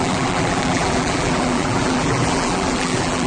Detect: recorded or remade remade